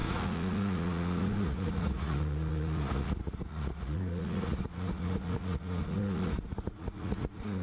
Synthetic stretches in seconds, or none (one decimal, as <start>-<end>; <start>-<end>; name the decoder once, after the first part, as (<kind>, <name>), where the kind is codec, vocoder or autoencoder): 0.0-7.6 (vocoder, Vocos)

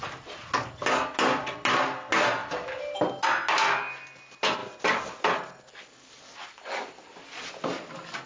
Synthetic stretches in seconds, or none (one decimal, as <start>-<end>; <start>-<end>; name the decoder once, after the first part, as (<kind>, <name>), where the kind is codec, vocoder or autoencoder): none

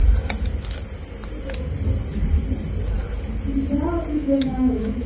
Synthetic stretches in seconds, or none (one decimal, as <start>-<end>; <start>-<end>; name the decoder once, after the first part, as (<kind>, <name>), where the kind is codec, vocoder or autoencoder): 4.1-5.1 (autoencoder, DAC-VAE)

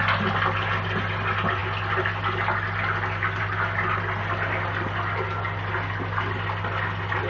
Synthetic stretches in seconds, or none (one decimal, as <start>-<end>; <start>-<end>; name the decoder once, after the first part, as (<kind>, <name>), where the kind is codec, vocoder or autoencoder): none

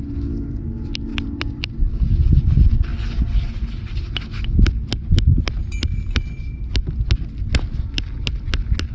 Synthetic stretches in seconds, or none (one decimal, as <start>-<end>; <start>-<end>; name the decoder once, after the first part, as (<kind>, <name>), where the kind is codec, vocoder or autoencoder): 1.1-2.4 (vocoder, BigVGAN v2)